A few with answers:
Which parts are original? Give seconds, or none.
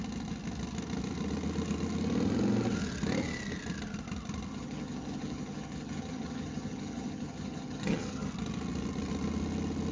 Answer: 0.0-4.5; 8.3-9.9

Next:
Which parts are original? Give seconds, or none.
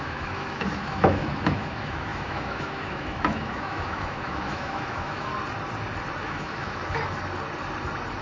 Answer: 5.3-6.2; 6.8-8.2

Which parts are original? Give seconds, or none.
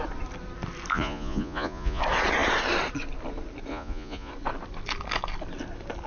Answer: 0.0-0.9; 2.0-3.7; 4.3-6.1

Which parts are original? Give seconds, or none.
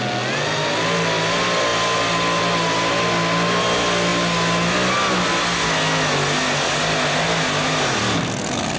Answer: 0.0-8.8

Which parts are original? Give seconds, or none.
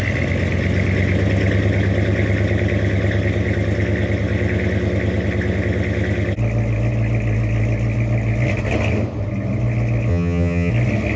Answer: 0.0-10.1; 10.7-11.2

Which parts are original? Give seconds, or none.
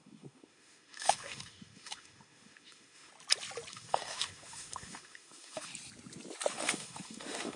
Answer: 3.1-3.7; 5.7-6.5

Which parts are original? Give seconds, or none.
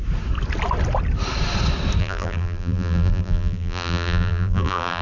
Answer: 0.0-2.0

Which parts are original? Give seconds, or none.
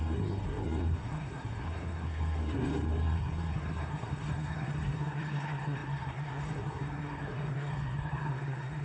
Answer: none